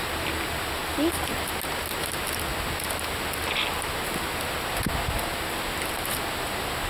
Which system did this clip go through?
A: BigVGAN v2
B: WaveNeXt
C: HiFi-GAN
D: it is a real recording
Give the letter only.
D